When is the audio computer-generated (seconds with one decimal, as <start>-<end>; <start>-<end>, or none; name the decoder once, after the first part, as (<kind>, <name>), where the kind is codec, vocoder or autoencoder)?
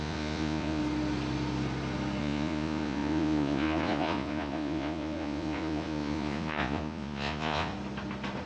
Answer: 0.0-0.8 (vocoder, Vocos); 2.2-7.7